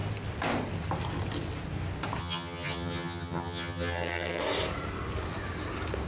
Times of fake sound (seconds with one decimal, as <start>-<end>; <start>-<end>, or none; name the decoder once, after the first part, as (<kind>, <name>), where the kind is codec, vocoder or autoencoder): 2.2-4.4 (vocoder, HiFi-GAN)